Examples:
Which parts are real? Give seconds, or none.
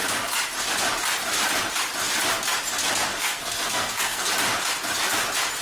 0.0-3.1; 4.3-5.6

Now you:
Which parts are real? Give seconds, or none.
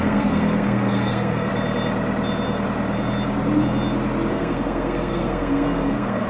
1.5-4.3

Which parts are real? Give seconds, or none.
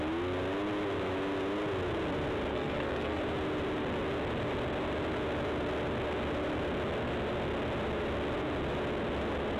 0.0-2.5; 3.2-9.6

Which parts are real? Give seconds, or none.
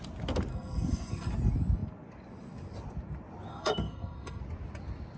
0.0-0.5; 1.3-3.5; 4.4-5.2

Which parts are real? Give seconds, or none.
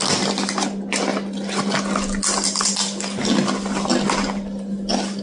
0.0-5.2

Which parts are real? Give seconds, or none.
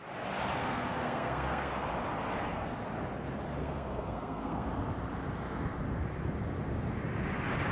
0.0-0.6; 1.7-3.6; 4.7-7.7